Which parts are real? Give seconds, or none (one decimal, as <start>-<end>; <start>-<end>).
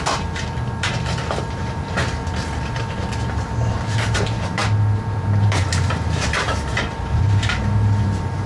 2.2-3.3; 4.6-5.4